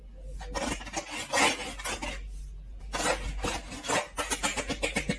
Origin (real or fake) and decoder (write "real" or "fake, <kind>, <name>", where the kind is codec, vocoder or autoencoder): real